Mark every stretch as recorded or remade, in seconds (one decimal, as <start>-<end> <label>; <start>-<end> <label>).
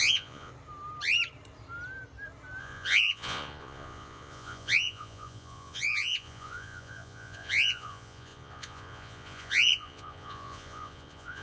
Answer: 0.0-0.5 remade; 0.5-2.6 recorded; 2.6-11.4 remade